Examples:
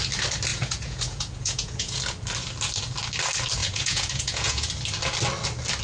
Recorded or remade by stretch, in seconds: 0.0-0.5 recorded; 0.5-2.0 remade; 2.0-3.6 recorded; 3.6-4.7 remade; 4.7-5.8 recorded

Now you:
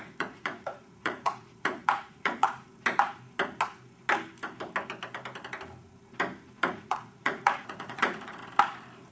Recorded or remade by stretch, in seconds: 0.0-2.7 remade; 2.7-6.7 recorded; 6.7-8.4 remade; 8.4-9.1 recorded

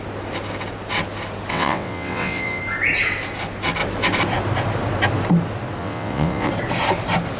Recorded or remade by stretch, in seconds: 0.0-1.5 recorded; 1.5-2.6 remade; 2.6-5.8 recorded; 5.8-6.5 remade; 6.5-7.4 recorded

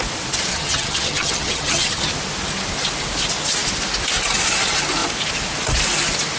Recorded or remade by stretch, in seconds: 0.0-0.5 recorded; 0.5-2.1 remade; 2.1-6.4 recorded

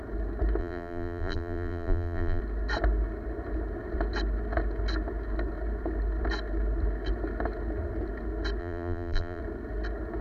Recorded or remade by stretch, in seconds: 0.0-0.6 recorded; 0.6-2.4 remade; 2.4-8.6 recorded; 8.6-9.4 remade; 9.4-10.2 recorded

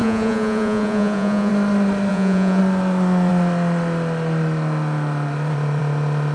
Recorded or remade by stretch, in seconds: 0.0-1.5 remade; 1.5-2.1 recorded; 2.1-2.6 remade; 2.6-6.3 recorded

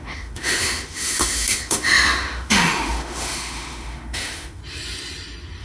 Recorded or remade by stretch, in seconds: 0.0-4.6 remade; 4.6-5.6 recorded